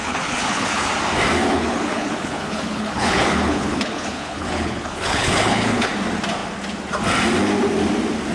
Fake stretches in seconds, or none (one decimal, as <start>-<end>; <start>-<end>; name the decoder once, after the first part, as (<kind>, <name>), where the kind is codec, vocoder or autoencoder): 0.0-0.9 (codec, HILCodec); 1.5-5.9